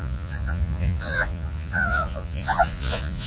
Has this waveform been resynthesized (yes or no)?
yes